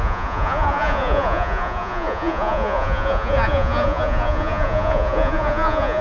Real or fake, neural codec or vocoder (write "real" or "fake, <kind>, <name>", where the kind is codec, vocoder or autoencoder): fake, vocoder, Vocos